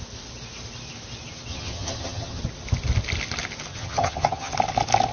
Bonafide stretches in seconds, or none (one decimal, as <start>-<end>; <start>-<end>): 0.0-1.5; 2.4-3.7; 4.5-5.1